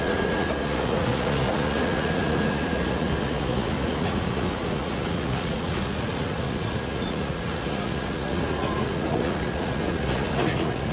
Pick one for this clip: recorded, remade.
remade